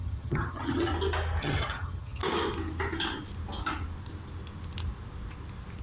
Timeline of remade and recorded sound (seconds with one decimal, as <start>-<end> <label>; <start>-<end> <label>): 0.0-0.9 remade; 0.9-1.4 recorded; 1.4-2.2 remade; 2.2-5.8 recorded